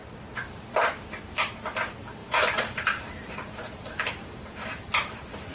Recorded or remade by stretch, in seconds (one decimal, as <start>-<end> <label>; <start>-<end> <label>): 0.0-2.2 recorded; 2.2-5.5 remade